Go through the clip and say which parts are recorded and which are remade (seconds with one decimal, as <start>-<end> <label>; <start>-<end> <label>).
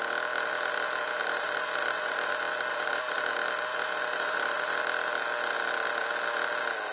0.0-1.2 recorded; 1.2-2.3 remade; 2.3-2.7 recorded; 2.7-3.3 remade; 3.3-3.7 recorded; 3.7-4.8 remade; 4.8-6.9 recorded